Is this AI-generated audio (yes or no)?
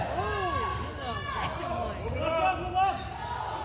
no